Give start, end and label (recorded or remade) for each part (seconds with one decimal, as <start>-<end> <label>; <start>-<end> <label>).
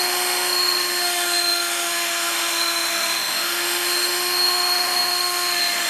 0.0-5.9 remade